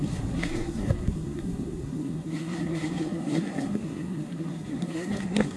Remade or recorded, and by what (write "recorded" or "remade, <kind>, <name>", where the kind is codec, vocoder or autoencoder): remade, codec, SNAC